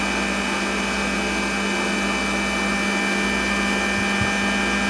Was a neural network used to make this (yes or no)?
no